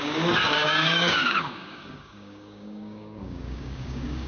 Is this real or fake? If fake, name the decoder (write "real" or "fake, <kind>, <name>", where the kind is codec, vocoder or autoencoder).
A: fake, codec, DAC